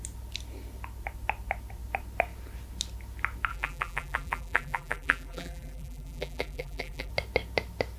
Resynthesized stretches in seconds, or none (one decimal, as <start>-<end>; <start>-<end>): 3.5-7.1